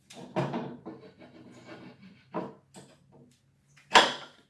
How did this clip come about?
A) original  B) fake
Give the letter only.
A